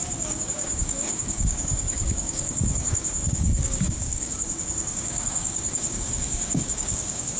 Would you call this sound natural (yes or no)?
no